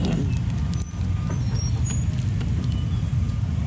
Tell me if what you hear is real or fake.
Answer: real